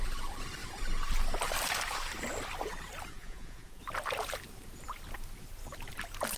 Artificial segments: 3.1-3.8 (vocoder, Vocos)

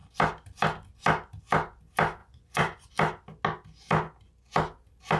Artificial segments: 2.2-2.9 (vocoder, Vocos)